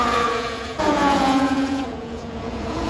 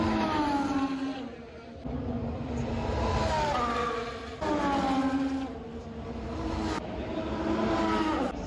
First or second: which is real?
second